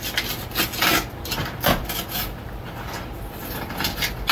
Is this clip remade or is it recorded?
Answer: recorded